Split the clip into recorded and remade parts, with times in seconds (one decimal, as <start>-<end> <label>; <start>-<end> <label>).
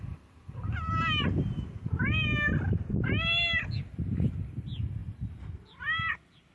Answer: 0.0-6.5 recorded